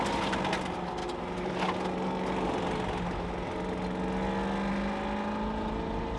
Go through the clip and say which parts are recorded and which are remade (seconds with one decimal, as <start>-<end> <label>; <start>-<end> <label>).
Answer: 0.0-6.2 recorded